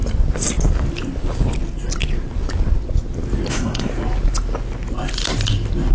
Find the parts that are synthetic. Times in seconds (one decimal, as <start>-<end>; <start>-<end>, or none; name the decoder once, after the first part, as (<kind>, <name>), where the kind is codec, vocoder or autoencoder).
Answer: 3.5-3.9 (codec, SNAC)